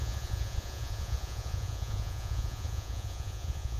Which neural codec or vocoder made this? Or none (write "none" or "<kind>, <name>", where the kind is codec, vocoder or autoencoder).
vocoder, Vocos